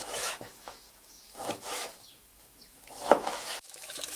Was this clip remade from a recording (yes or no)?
yes